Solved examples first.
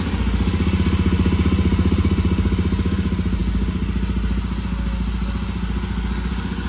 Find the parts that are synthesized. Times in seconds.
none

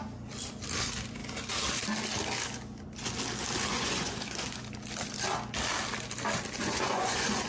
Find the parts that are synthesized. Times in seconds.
3.7-4.6; 6.6-7.5

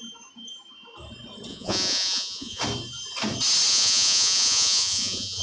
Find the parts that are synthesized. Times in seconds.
1.5-2.6; 3.7-5.4

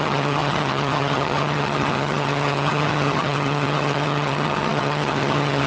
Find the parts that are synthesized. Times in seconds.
0.0-5.7